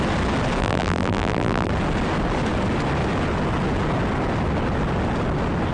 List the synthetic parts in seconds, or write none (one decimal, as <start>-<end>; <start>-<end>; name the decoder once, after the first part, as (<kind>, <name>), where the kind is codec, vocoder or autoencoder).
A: 0.6-1.7 (vocoder, BigVGAN v2)